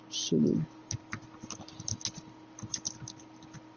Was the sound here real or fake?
real